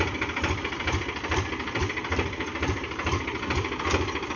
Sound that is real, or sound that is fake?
real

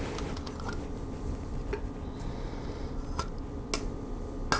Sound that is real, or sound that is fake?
real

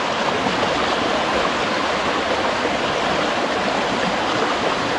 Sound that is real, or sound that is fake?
real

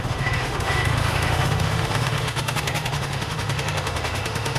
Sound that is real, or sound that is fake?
fake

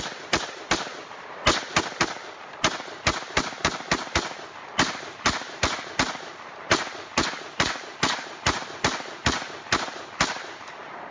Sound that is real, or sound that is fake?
real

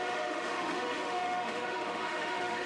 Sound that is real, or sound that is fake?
fake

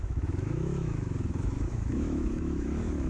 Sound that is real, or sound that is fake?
fake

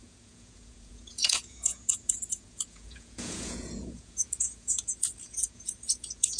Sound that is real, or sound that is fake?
fake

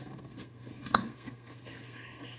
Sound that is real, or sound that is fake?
fake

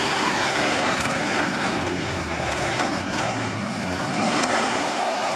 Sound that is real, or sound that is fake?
fake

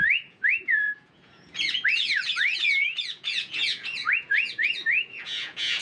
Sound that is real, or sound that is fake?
fake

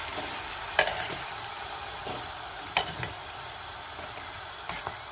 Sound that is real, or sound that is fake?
fake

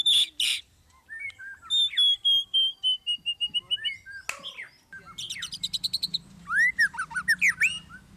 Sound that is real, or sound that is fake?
real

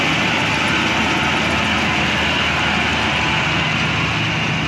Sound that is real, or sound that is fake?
real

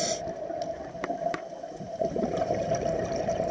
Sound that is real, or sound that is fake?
fake